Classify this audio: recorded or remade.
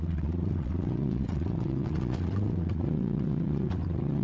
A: remade